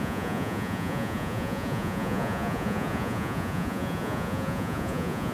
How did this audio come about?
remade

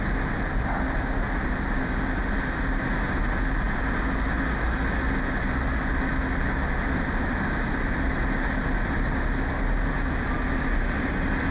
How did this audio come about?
recorded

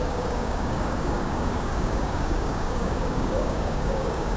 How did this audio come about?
remade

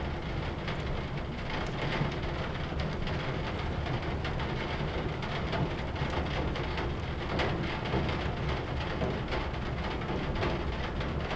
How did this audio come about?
recorded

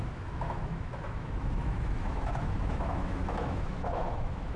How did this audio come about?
remade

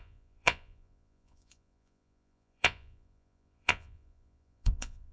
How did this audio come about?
remade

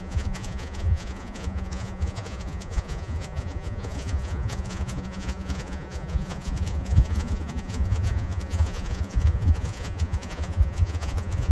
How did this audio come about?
remade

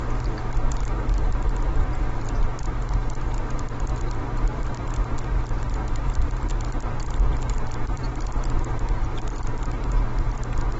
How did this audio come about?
remade